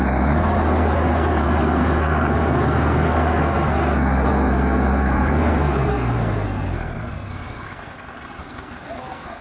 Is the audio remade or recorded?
remade